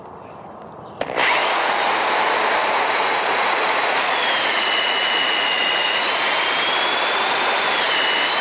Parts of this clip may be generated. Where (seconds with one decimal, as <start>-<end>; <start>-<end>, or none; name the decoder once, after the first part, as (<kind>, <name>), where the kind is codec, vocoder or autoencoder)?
1.4-2.1 (vocoder, Vocos); 2.6-6.2